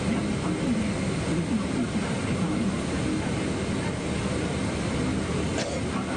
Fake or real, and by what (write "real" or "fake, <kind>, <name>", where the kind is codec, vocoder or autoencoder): real